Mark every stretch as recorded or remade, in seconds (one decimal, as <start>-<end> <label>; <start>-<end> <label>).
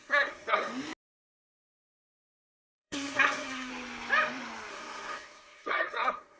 0.0-0.7 remade; 0.7-1.5 recorded; 1.5-3.7 remade; 3.7-4.7 recorded; 4.7-6.4 remade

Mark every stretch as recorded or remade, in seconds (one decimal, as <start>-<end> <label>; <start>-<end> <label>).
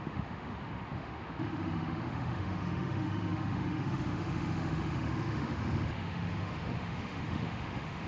0.0-8.1 remade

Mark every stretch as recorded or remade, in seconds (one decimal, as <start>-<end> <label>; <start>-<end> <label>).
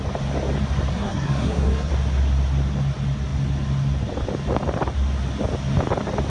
0.0-0.9 recorded; 0.9-1.9 remade; 1.9-6.3 recorded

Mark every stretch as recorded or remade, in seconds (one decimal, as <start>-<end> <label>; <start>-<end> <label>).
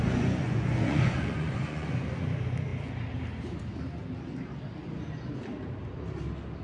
0.0-2.1 remade; 2.1-6.6 recorded